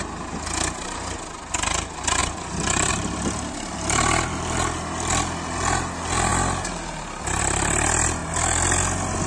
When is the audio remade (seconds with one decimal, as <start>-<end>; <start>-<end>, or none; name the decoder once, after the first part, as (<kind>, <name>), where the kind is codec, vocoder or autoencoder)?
2.2-2.9 (vocoder, BigVGAN v2)